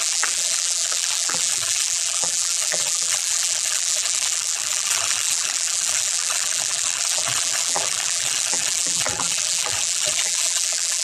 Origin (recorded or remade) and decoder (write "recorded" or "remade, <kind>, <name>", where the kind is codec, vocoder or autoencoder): remade, vocoder, BigVGAN v2